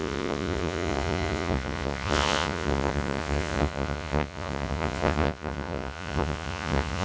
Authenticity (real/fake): fake